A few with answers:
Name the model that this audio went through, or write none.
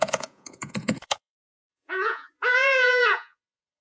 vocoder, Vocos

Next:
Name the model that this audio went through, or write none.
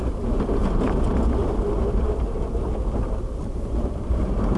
none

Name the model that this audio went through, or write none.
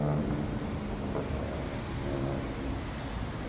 none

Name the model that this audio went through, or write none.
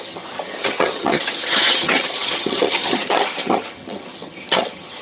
vocoder, HiFi-GAN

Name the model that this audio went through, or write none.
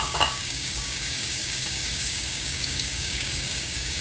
codec, DAC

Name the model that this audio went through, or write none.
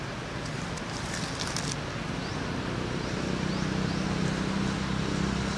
none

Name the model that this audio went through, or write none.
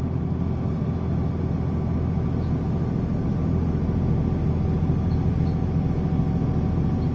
none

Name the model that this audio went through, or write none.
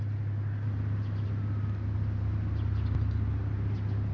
none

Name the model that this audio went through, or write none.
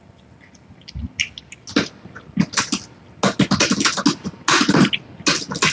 none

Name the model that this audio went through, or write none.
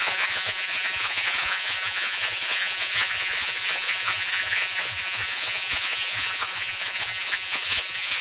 vocoder, Vocos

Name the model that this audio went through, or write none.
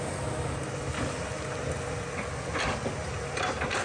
none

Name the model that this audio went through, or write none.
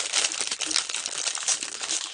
none